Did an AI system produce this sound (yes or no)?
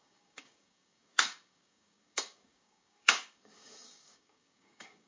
yes